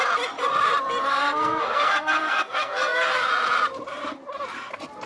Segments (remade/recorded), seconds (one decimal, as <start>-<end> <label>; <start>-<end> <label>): 0.0-1.1 recorded; 1.1-3.3 remade; 3.3-5.1 recorded